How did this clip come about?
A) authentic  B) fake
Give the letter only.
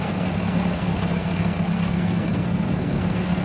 B